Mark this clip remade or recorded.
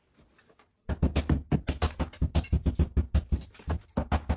recorded